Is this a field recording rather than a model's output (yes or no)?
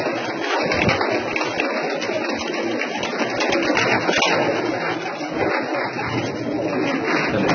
yes